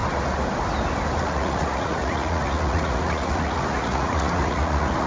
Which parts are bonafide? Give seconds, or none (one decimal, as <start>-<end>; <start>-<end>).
0.0-1.2